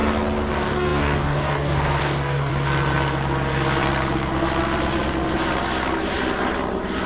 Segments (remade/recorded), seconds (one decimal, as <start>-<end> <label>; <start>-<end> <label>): 0.0-0.5 recorded; 0.5-2.5 remade; 2.5-7.1 recorded